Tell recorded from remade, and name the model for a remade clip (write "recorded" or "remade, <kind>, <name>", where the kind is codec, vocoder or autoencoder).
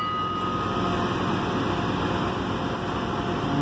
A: recorded